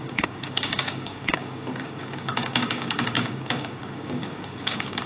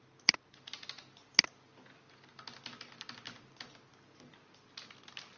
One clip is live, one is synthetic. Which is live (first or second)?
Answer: second